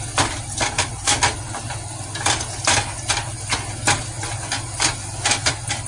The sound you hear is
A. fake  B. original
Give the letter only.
B